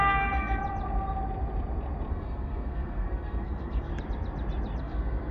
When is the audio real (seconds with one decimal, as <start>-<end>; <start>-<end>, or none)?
0.6-2.1; 3.9-4.8

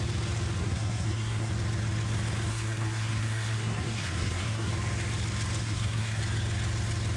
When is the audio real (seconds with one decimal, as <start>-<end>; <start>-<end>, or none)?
0.0-0.6; 1.5-2.5; 4.7-5.6; 6.2-7.2

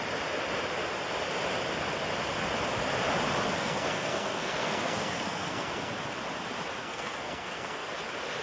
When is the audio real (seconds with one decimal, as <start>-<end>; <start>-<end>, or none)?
0.0-3.5; 5.9-6.8; 7.9-8.4

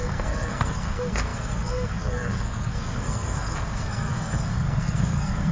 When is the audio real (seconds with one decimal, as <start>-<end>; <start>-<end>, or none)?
none